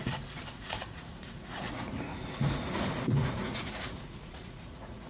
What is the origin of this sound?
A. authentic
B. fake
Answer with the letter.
B